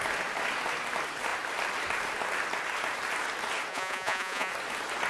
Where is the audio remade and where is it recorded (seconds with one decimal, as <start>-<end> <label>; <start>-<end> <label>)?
0.0-3.7 recorded; 3.7-4.5 remade; 4.5-5.1 recorded